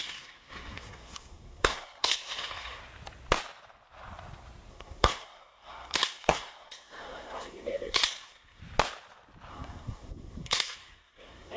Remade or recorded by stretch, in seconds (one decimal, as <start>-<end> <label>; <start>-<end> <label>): 0.0-2.8 remade; 2.8-4.7 recorded; 4.7-8.6 remade; 8.6-9.5 recorded; 9.5-11.6 remade